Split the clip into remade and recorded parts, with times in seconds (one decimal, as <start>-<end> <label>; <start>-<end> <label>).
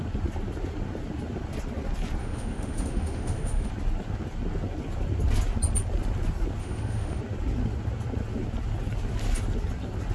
0.0-2.2 recorded; 2.2-3.7 remade; 3.7-6.6 recorded; 6.6-7.2 remade; 7.2-10.1 recorded